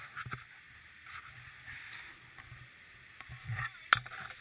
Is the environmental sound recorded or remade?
recorded